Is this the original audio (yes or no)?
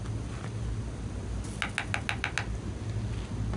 yes